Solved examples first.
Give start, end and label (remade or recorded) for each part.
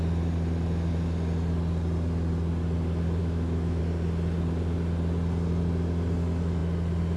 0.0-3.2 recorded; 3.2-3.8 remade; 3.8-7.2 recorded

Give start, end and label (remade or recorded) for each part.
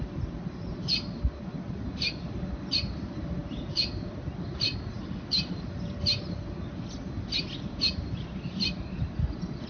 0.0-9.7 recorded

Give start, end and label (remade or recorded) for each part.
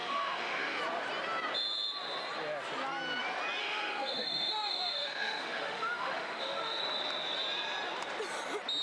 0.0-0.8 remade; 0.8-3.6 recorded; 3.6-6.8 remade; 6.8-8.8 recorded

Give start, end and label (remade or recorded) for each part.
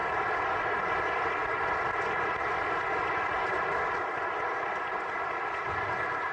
0.0-6.3 recorded